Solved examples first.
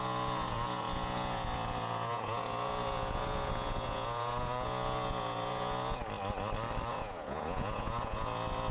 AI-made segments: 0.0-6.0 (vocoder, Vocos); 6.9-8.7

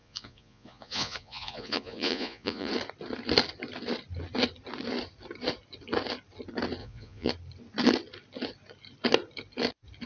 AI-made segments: 0.0-2.7 (vocoder, Vocos); 6.8-7.3

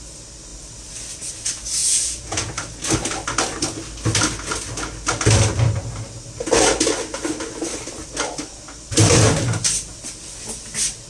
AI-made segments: 1.8-2.5 (vocoder, Vocos)

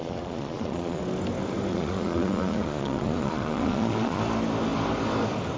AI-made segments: 0.0-1.0 (vocoder, Vocos); 1.7-4.2